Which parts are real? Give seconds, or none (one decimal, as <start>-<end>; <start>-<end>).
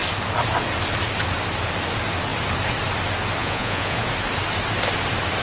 0.0-3.4; 4.0-5.4